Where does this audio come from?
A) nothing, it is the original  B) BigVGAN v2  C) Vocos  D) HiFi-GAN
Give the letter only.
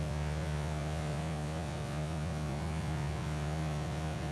C